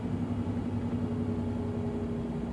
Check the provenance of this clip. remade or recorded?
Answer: recorded